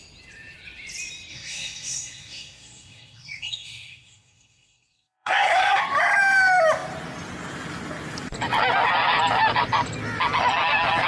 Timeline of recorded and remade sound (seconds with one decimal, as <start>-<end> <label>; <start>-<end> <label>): 0.0-1.3 recorded; 1.3-5.8 remade; 5.8-11.1 recorded